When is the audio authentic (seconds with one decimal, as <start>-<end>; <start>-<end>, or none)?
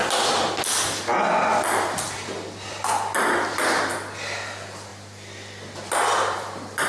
0.0-4.9